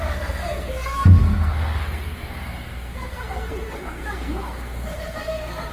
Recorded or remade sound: remade